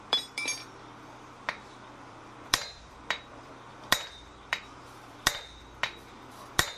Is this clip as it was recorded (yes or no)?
no